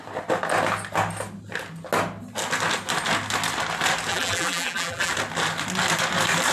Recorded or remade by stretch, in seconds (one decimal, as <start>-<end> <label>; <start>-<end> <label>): 0.0-4.1 recorded; 4.1-5.1 remade; 5.1-6.5 recorded